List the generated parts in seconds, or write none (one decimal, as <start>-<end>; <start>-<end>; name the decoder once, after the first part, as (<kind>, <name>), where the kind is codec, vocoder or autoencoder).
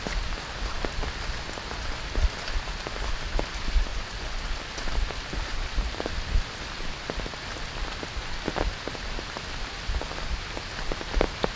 3.9-4.4 (vocoder, Vocos)